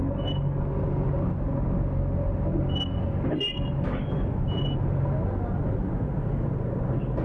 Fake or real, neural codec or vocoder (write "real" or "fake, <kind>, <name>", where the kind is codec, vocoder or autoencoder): real